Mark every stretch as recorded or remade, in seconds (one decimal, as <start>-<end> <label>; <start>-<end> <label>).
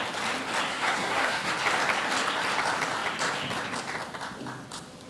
0.0-0.7 recorded; 0.7-1.5 remade; 1.5-5.1 recorded